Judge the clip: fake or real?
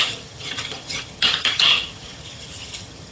fake